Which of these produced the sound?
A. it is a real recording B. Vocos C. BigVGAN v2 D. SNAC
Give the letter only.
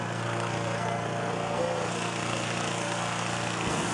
D